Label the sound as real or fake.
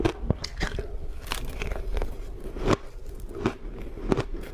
real